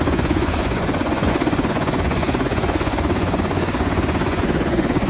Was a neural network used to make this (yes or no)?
yes